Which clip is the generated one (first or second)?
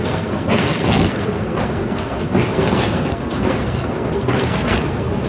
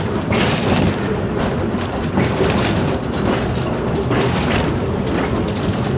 first